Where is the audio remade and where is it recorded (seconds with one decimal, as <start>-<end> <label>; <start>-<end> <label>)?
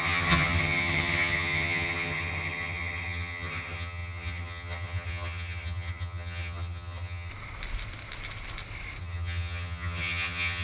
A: 0.0-7.3 remade; 7.3-9.0 recorded; 9.0-10.6 remade